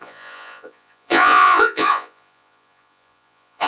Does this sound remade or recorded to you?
remade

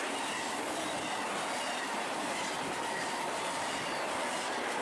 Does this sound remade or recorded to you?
recorded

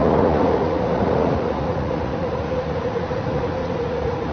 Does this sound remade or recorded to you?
remade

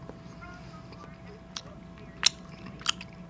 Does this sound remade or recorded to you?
recorded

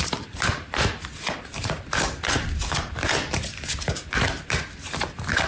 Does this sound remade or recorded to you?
recorded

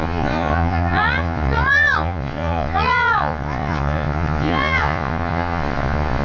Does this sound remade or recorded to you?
remade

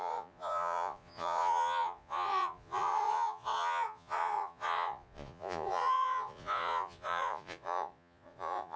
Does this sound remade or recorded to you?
remade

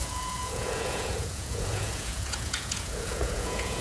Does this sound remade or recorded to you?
remade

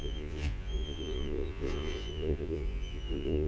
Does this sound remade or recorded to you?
remade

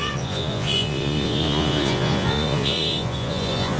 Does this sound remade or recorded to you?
remade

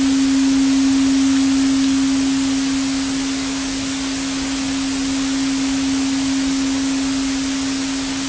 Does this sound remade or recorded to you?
recorded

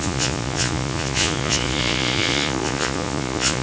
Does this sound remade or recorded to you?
remade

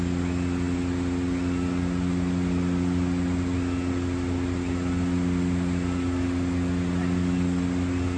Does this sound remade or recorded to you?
recorded